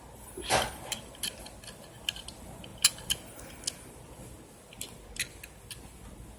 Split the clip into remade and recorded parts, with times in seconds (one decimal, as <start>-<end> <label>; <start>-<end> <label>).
0.0-6.4 recorded